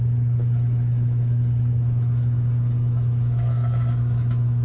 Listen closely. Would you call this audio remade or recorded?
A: remade